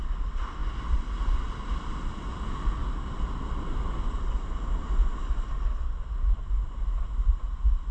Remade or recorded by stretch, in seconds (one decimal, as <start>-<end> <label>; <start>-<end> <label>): 0.0-7.9 recorded